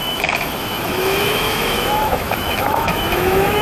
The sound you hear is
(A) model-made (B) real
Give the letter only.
A